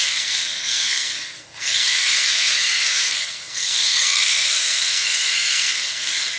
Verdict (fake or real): fake